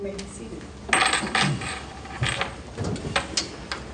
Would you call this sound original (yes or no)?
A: yes